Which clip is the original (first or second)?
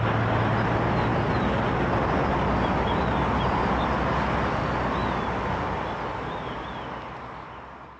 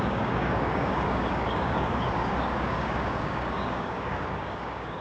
first